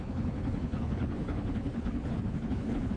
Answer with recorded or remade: remade